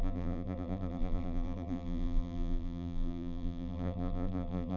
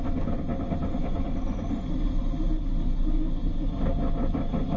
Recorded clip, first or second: second